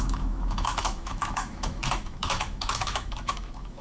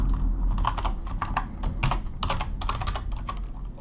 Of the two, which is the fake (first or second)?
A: first